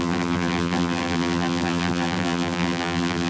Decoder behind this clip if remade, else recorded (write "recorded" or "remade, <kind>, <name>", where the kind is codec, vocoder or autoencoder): remade, vocoder, BigVGAN v2